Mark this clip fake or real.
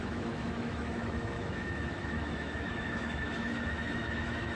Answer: fake